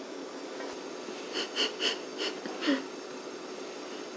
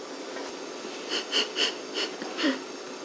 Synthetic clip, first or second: second